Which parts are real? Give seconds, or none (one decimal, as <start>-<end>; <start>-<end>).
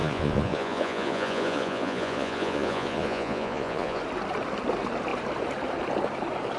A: 4.0-6.6